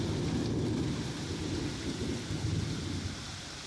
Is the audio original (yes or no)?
yes